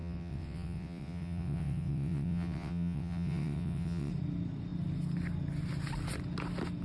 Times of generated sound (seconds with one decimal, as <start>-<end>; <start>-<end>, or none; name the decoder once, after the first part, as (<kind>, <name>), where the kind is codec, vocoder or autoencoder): 0.0-4.1 (vocoder, WaveNeXt)